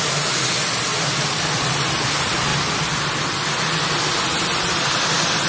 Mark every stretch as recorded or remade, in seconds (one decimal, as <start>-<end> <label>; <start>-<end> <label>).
0.0-5.5 recorded

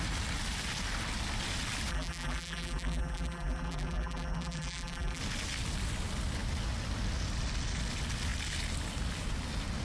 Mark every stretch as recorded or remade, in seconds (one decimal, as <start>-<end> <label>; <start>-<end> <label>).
0.0-1.9 recorded; 1.9-5.2 remade; 5.2-9.8 recorded

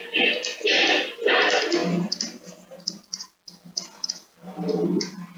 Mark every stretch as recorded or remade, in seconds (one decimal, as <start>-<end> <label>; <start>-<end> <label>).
0.0-5.4 recorded

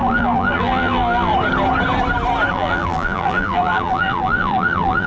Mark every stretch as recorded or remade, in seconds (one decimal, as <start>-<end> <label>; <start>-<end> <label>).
0.0-1.3 remade; 1.3-2.5 recorded; 2.5-5.1 remade

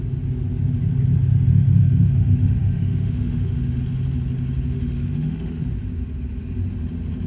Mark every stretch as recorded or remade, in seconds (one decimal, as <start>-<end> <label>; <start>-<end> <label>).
0.0-1.5 recorded; 1.5-3.8 remade; 3.8-4.7 recorded; 4.7-5.6 remade; 5.6-7.3 recorded